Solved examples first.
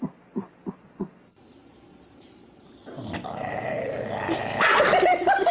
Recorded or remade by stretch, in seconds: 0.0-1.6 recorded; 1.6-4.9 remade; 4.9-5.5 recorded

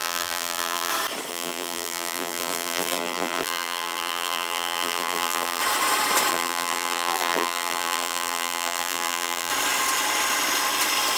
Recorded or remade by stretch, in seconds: 0.0-0.9 remade; 0.9-1.3 recorded; 1.3-5.6 remade; 5.6-6.3 recorded; 6.3-9.5 remade; 9.5-11.2 recorded

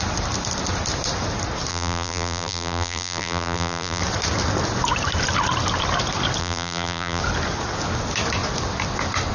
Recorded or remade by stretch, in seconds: 0.0-1.7 recorded; 1.7-4.0 remade; 4.0-6.4 recorded; 6.4-7.2 remade; 7.2-9.3 recorded

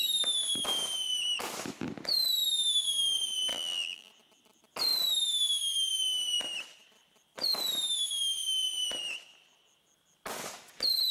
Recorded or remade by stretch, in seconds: 0.0-3.5 recorded; 3.5-4.1 remade; 4.1-11.1 recorded

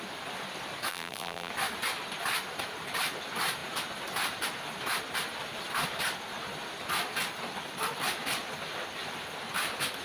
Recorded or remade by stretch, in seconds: 0.0-0.9 recorded; 0.9-1.5 remade; 1.5-10.0 recorded

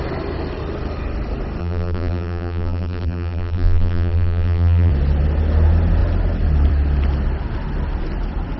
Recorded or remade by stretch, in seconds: 0.0-1.6 recorded; 1.6-4.9 remade; 4.9-8.6 recorded